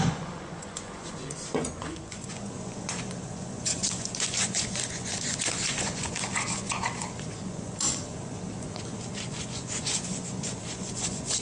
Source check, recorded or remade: remade